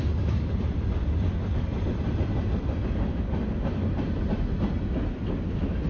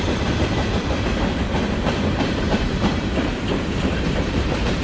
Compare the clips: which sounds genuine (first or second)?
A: first